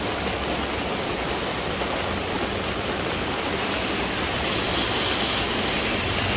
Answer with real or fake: real